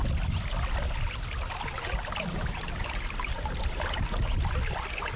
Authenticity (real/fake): real